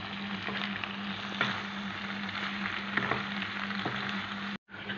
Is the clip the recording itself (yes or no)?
yes